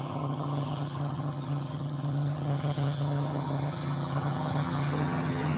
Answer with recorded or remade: remade